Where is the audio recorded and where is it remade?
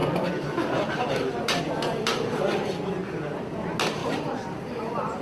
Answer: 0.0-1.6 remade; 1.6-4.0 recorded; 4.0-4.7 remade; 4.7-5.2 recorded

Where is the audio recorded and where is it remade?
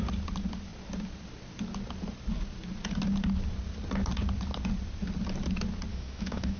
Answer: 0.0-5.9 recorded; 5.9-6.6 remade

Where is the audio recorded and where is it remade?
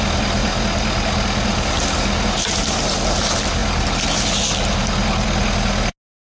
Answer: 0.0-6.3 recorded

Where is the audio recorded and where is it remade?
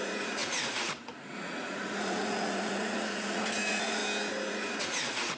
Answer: 0.0-4.0 remade; 4.0-4.5 recorded; 4.5-5.4 remade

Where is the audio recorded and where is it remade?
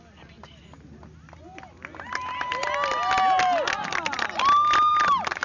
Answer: 0.0-5.4 recorded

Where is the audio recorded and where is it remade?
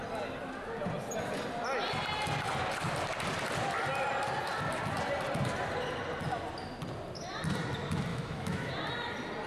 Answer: 0.0-8.1 recorded; 8.1-8.7 remade; 8.7-9.5 recorded